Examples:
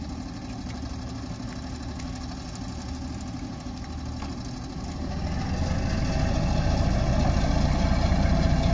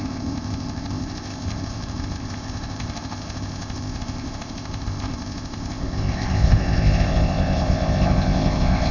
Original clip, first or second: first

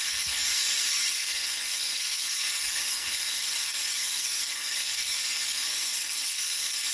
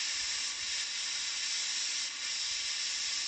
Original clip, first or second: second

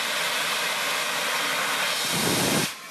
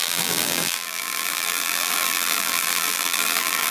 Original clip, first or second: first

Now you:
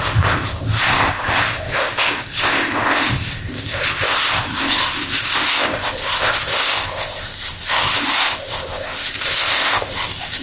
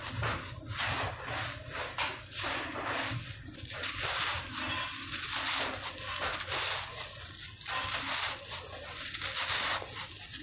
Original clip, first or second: second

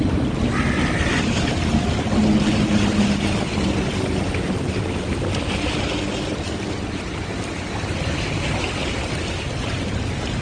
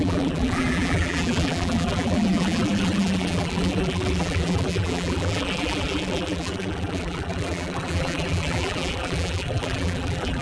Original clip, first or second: first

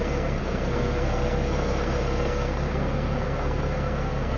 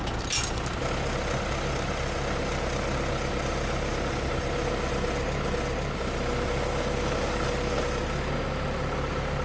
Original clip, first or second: second